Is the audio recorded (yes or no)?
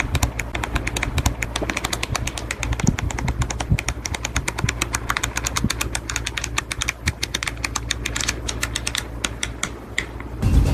no